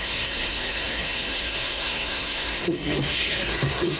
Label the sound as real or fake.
fake